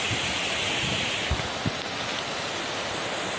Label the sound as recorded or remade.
recorded